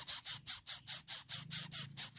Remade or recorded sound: recorded